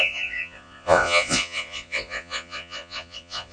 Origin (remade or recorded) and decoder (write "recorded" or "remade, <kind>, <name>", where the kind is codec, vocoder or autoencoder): remade, vocoder, Vocos